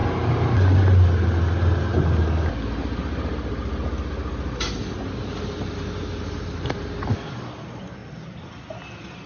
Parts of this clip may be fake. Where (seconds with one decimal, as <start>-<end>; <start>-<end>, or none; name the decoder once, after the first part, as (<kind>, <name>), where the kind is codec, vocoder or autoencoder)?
none

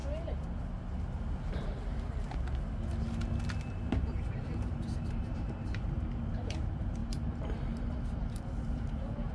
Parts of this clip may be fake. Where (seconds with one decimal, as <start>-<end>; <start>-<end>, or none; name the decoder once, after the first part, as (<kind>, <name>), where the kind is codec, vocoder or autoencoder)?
1.5-1.9 (vocoder, BigVGAN v2); 3.7-9.3

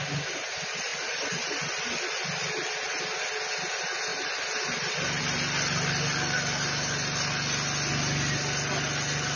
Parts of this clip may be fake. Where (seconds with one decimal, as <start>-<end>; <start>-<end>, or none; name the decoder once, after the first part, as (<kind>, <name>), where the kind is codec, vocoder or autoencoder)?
none

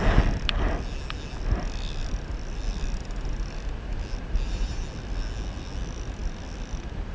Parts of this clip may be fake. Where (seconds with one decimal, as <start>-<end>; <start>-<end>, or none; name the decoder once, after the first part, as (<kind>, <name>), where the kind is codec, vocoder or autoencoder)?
none

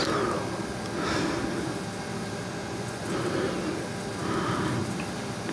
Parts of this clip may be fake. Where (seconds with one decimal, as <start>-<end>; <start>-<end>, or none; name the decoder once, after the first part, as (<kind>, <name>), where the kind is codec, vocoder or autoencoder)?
2.6-3.1 (vocoder, Vocos)

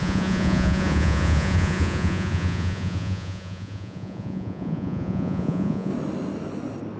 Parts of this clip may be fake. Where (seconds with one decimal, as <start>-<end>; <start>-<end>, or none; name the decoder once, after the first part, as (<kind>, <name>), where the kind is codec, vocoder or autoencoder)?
0.0-5.9 (vocoder, Vocos)